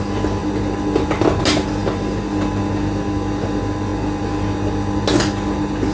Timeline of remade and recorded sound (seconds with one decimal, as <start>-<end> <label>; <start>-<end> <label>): 0.0-5.9 recorded